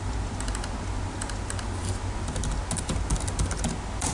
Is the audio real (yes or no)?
yes